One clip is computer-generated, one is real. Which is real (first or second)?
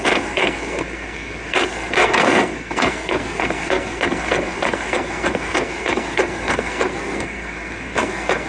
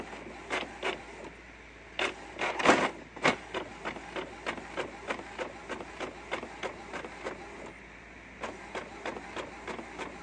second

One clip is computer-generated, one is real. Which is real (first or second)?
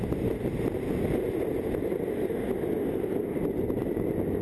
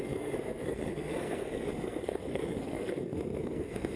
first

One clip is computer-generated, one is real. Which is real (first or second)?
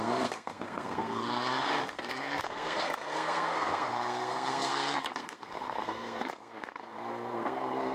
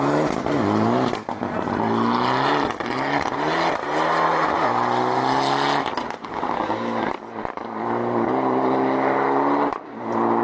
second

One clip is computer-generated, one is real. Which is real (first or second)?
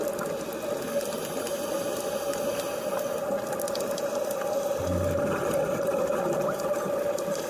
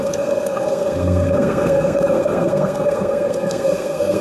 first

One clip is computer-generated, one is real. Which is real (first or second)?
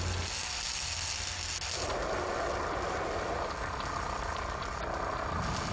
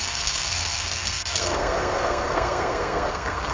first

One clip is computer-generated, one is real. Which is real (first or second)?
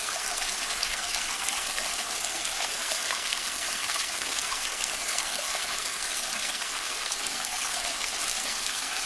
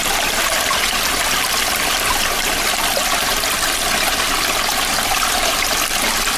second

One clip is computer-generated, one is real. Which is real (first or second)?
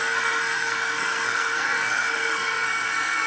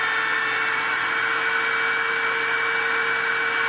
second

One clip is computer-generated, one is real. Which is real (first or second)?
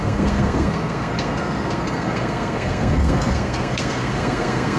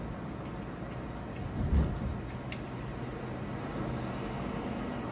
second